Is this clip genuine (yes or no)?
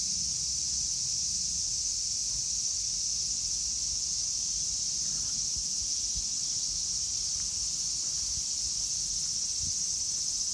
yes